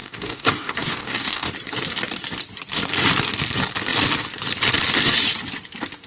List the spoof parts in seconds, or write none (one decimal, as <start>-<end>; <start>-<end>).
0.0-1.5